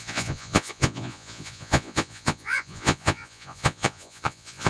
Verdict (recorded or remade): remade